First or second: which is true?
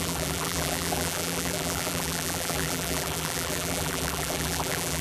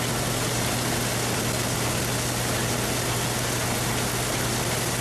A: second